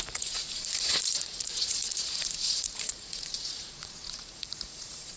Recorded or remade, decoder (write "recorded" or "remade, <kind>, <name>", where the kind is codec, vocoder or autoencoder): remade, vocoder, Vocos